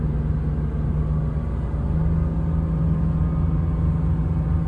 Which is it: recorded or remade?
recorded